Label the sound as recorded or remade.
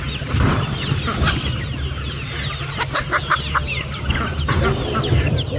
recorded